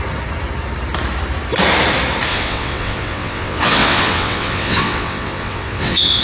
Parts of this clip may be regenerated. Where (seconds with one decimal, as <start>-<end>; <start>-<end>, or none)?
2.3-6.2

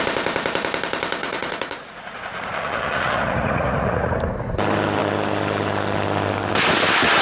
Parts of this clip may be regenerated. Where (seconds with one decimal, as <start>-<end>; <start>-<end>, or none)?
1.2-4.2